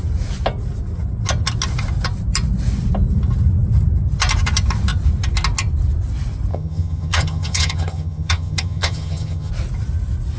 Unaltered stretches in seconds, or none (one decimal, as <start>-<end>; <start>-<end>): 0.0-6.5; 9.5-10.4